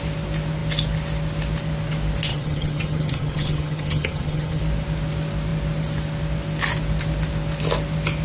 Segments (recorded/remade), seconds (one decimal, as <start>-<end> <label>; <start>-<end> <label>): 0.0-2.3 recorded; 2.3-4.6 remade; 4.6-8.2 recorded